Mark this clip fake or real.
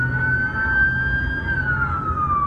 real